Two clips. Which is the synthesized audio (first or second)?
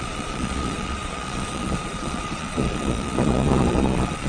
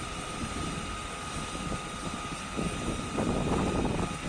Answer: first